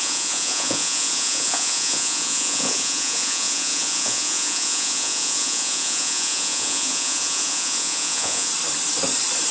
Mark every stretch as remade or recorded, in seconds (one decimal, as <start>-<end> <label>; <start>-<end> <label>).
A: 0.0-8.5 remade; 8.5-9.5 recorded